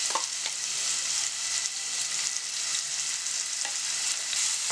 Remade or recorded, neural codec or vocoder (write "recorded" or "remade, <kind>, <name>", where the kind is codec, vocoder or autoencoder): recorded